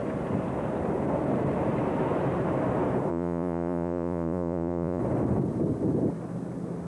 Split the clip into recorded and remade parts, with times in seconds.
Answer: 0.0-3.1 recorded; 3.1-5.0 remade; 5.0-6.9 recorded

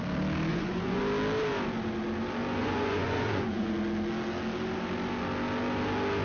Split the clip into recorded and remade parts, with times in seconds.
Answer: 0.0-0.5 recorded; 0.5-1.0 remade; 1.0-2.6 recorded; 2.6-3.7 remade; 3.7-6.2 recorded